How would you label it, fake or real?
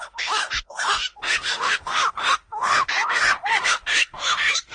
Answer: fake